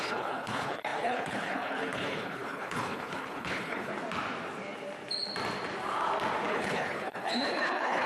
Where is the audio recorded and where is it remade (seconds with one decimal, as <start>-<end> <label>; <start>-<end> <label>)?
0.0-3.9 remade; 3.9-6.5 recorded; 6.5-8.1 remade